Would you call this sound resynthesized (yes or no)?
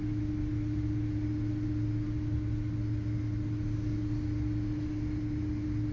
no